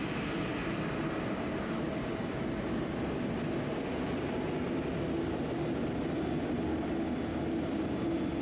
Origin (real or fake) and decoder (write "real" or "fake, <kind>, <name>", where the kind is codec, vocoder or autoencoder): real